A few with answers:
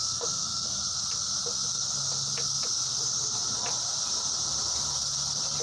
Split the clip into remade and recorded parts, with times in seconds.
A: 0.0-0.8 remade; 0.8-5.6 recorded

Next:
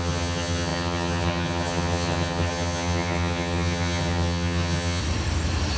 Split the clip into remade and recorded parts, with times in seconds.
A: 0.0-5.0 remade; 5.0-5.8 recorded

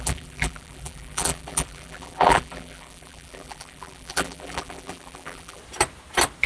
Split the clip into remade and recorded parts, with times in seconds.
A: 0.0-5.6 remade; 5.6-6.5 recorded

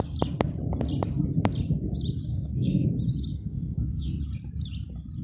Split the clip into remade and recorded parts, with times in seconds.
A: 0.0-2.3 recorded; 2.3-2.9 remade; 2.9-3.3 recorded; 3.3-4.2 remade; 4.2-5.2 recorded

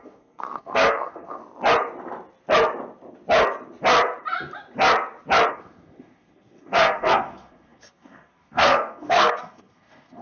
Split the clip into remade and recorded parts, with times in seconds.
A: 0.0-1.4 remade; 1.4-5.5 recorded; 5.5-10.2 remade

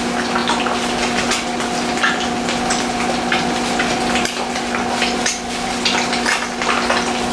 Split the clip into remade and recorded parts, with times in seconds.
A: 0.0-7.3 recorded

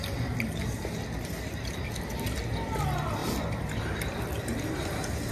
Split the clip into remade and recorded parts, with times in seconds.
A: 0.0-5.3 recorded